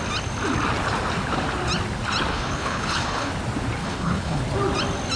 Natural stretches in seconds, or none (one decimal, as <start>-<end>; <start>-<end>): 0.0-2.3; 3.3-3.8; 4.4-5.2